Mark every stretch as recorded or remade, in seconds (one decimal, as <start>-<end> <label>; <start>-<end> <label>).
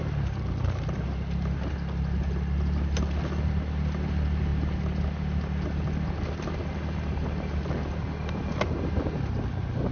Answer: 0.0-9.9 recorded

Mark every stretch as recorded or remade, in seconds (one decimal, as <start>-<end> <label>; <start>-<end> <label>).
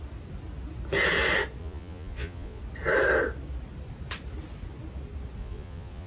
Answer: 0.0-1.6 recorded; 1.6-2.6 remade; 2.6-5.4 recorded; 5.4-6.1 remade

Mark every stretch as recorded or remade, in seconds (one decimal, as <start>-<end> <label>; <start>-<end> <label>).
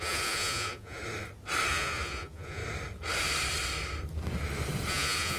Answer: 0.0-1.0 remade; 1.0-1.7 recorded; 1.7-2.6 remade; 2.6-4.9 recorded; 4.9-5.4 remade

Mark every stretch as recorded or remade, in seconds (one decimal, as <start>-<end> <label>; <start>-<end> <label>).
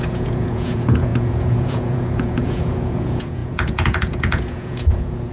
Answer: 0.0-5.3 remade